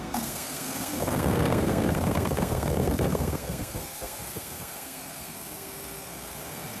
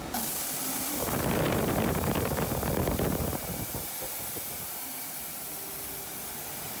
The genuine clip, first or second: second